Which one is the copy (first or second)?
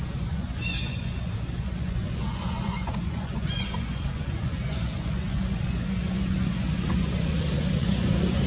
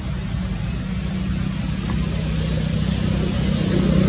first